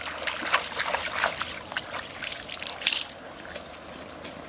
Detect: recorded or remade recorded